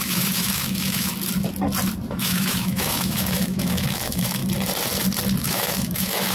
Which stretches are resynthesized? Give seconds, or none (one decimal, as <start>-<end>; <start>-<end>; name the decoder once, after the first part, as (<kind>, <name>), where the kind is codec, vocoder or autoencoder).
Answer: 0.0-1.1 (autoencoder, DAC-VAE); 2.1-4.4; 5.4-6.3